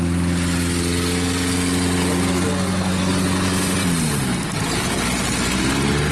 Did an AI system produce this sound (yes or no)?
no